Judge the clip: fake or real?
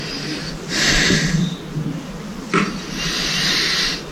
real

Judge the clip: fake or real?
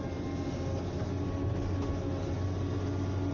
real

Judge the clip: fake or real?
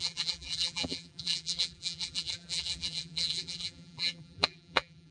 fake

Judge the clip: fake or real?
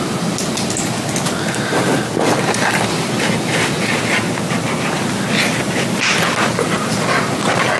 real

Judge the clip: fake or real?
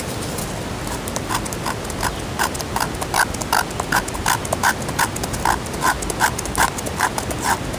real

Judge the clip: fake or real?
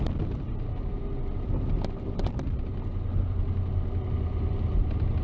real